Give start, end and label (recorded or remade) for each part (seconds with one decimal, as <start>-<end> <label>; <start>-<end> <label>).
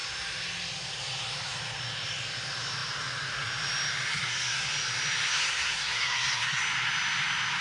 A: 0.0-4.1 recorded; 4.1-4.7 remade; 4.7-5.3 recorded; 5.3-6.6 remade; 6.6-7.6 recorded